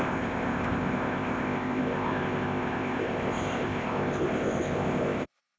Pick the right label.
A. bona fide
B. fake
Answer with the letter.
B